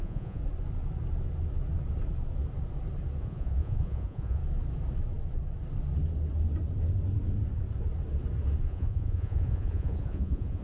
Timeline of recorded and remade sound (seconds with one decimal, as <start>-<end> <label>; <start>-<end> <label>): 0.0-0.4 remade; 0.4-3.2 recorded; 3.2-4.4 remade; 4.4-8.7 recorded; 8.7-10.6 remade